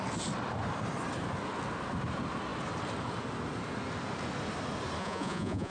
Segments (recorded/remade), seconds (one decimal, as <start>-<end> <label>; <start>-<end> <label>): 0.0-5.0 recorded; 5.0-5.7 remade